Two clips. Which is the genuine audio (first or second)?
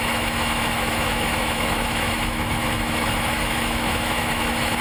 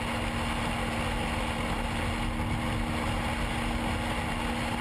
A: second